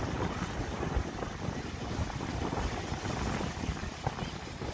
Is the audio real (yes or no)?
yes